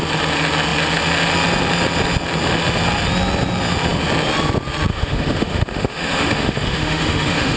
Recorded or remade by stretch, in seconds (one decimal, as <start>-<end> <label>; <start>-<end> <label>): 0.0-4.9 recorded; 4.9-7.6 remade